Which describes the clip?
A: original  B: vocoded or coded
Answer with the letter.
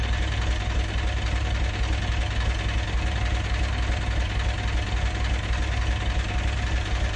A